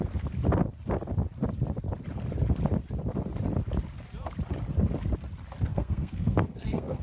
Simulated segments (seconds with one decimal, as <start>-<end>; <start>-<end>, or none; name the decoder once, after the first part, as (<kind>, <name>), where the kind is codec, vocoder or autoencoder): 5.7-7.0 (codec, SNAC)